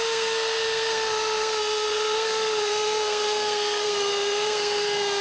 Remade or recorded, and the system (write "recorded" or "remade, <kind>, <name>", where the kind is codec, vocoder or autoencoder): remade, codec, SNAC